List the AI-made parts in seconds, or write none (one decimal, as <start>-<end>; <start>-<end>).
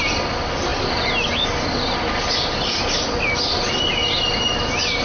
none